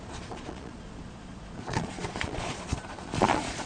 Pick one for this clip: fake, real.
fake